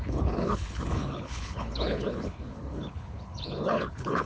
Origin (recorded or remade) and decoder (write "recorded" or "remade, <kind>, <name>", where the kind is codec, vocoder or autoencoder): remade, codec, HILCodec